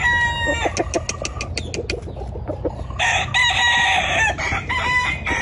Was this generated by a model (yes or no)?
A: no